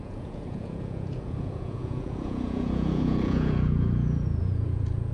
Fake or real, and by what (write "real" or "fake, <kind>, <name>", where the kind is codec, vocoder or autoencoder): fake, vocoder, Vocos